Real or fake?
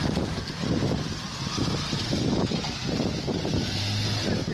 real